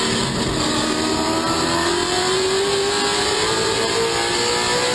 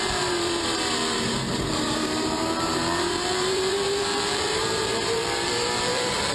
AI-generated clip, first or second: second